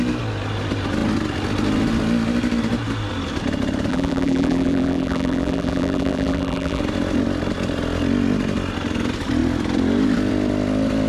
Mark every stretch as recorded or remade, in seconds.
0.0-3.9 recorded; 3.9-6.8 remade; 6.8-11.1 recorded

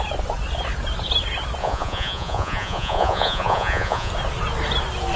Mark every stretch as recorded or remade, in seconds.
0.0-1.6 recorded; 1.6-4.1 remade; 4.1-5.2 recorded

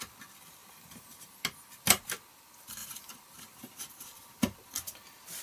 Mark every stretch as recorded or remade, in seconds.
0.0-0.6 recorded; 0.6-1.4 remade; 1.4-2.8 recorded; 2.8-3.8 remade; 3.8-5.4 recorded

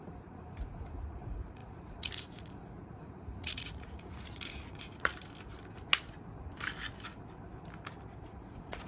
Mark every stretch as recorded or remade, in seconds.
0.0-5.1 remade; 5.1-8.2 recorded; 8.2-8.9 remade

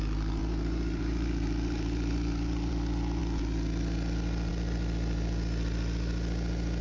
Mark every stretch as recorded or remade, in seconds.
0.0-0.4 recorded; 0.4-2.7 remade; 2.7-6.8 recorded